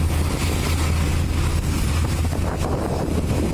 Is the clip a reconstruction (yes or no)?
no